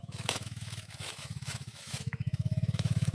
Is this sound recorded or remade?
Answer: remade